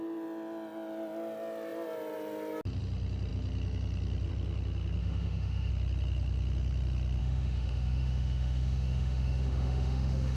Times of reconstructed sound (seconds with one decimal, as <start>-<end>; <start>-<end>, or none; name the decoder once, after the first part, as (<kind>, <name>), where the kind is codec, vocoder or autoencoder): 5.0-5.7 (autoencoder, DAC-VAE); 7.2-10.4